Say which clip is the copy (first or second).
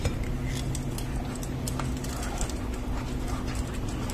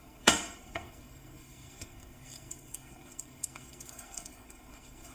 second